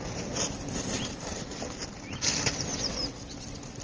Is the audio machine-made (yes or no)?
no